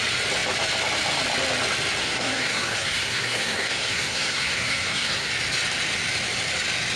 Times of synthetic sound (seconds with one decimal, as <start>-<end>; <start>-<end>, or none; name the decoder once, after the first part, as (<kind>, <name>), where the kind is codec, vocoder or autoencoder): 2.0-5.3 (codec, SNAC)